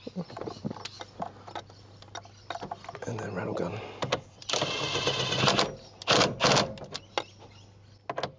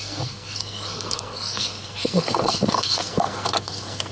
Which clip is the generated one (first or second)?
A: second